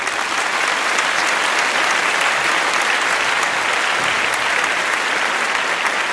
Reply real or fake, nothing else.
real